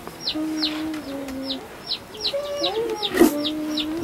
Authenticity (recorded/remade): recorded